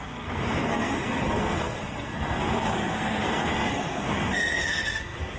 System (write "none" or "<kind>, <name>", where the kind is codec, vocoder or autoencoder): codec, SNAC